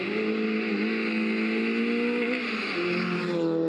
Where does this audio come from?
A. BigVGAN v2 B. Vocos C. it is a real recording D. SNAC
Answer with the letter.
C